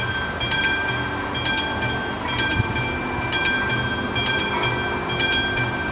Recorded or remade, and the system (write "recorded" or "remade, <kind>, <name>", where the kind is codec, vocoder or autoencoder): recorded